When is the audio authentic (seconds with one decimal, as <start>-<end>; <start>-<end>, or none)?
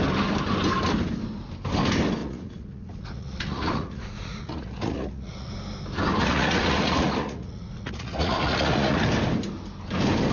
0.0-2.2; 5.5-6.2; 9.1-10.3